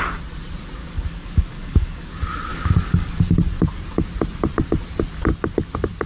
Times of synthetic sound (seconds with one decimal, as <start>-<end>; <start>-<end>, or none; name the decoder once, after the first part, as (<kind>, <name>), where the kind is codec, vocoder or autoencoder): 0.8-2.1 (codec, DAC); 2.5-3.3